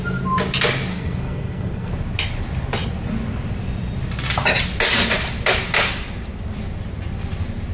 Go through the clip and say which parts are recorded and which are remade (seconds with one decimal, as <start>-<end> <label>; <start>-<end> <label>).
0.0-0.9 recorded; 0.9-1.9 remade; 1.9-7.7 recorded